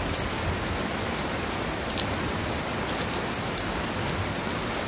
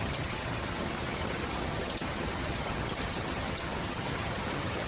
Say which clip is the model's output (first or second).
second